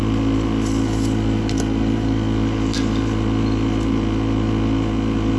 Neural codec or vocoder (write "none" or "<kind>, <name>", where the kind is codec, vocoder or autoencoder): none